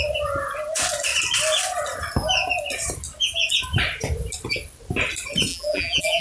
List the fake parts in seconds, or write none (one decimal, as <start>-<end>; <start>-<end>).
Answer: 5.5-6.2